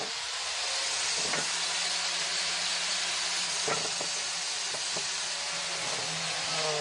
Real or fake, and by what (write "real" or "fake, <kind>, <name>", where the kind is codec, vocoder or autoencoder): real